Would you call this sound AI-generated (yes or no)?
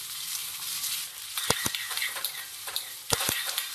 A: yes